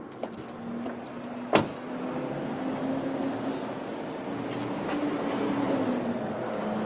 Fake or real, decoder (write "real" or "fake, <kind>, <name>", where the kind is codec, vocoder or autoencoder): real